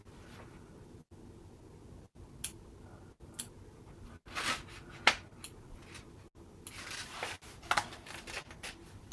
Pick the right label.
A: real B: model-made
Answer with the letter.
A